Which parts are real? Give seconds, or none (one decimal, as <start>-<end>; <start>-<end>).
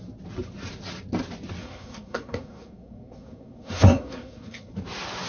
0.0-1.6; 4.7-5.3